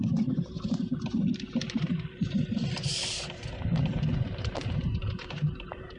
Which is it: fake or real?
fake